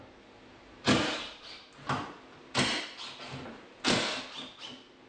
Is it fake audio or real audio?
real